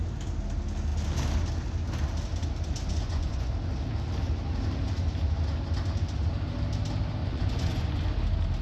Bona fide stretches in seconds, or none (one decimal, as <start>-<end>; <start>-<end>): 0.0-2.9; 3.5-7.2; 8.0-8.6